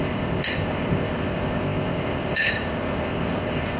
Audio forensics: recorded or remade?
remade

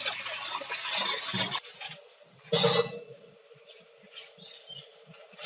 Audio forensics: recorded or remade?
recorded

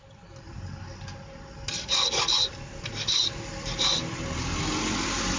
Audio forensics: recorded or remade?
recorded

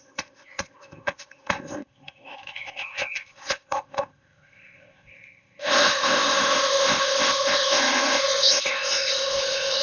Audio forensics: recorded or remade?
remade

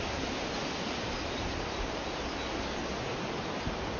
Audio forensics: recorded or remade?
recorded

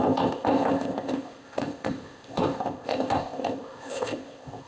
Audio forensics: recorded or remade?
remade